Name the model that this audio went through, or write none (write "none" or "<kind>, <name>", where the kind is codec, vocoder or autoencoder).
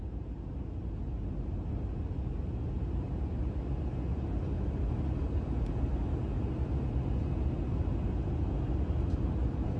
none